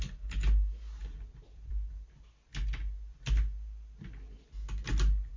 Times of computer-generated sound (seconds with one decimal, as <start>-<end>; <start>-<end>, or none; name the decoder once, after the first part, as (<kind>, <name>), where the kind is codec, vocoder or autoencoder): 1.0-1.9 (vocoder, BigVGAN v2)